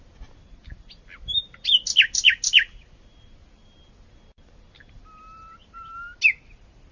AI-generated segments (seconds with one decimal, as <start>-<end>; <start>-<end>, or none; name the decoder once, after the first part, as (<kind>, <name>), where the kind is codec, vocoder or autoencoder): none

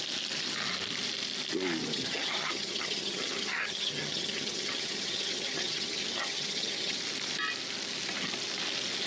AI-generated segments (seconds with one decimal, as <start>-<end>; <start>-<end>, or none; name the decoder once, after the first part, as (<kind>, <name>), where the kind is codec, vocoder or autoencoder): 1.8-7.0 (vocoder, HiFi-GAN)

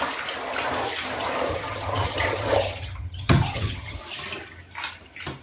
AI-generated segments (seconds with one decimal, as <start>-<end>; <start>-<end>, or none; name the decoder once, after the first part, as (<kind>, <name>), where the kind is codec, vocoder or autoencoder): 1.5-4.0 (vocoder, HiFi-GAN)

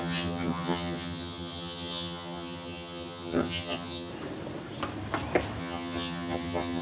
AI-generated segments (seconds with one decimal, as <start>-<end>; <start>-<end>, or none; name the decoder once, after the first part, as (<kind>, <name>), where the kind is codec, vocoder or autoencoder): 0.0-4.1 (vocoder, HiFi-GAN); 5.6-6.8

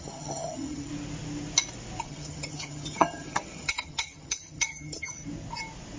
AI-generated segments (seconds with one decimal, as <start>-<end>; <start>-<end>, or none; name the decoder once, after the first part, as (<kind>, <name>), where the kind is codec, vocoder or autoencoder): 0.0-0.9 (vocoder, HiFi-GAN); 2.0-5.2